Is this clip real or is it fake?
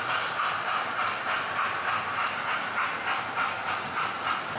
real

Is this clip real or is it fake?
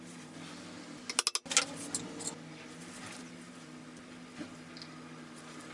real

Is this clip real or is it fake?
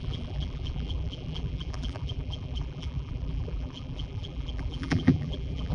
fake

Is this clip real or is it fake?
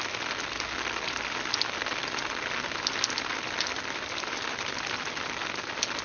real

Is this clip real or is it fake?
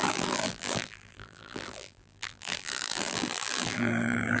fake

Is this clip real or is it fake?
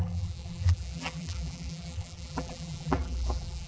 fake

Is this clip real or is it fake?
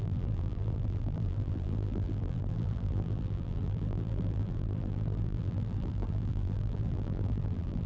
fake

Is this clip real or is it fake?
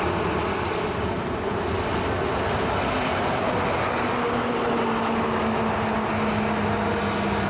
real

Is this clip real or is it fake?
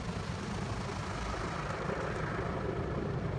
real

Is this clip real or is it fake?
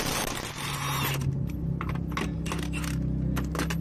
real